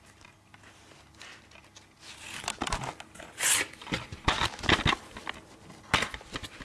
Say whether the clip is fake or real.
real